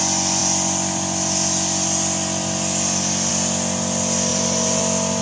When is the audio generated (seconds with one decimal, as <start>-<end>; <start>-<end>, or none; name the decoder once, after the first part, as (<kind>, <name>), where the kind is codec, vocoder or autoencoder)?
4.3-4.8 (vocoder, BigVGAN v2)